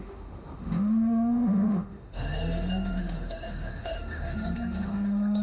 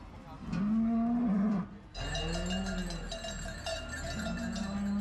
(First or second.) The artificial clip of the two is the first